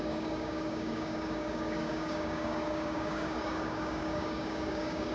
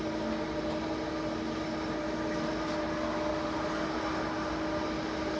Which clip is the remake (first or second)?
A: first